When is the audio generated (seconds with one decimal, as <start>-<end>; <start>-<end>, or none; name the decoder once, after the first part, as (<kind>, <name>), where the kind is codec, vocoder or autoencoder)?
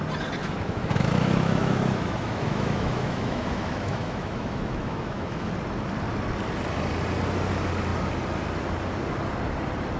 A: 0.4-5.5 (autoencoder, DAC-VAE)